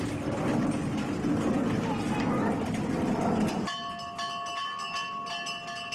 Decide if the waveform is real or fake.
real